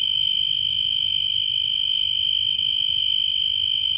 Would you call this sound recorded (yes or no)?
yes